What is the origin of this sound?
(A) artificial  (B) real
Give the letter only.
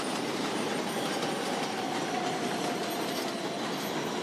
B